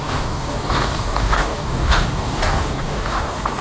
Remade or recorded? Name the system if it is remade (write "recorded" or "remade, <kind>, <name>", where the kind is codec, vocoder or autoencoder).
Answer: remade, codec, DAC